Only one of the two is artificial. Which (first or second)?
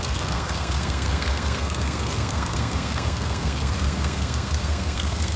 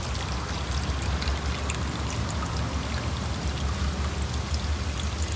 first